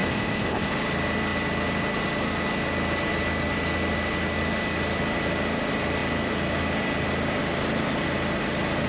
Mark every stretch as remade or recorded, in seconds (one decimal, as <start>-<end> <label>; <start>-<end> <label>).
0.0-0.7 remade; 0.7-8.9 recorded